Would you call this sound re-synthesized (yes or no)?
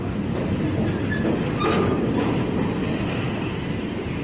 no